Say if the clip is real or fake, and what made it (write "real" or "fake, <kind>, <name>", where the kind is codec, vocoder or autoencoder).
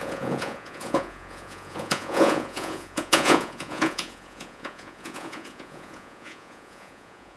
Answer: fake, vocoder, Vocos